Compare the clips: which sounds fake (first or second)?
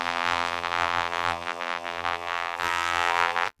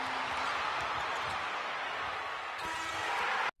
first